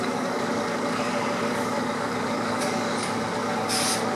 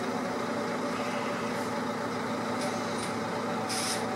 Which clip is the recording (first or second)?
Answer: second